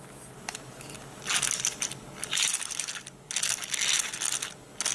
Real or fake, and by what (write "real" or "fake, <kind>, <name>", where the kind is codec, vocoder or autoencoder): real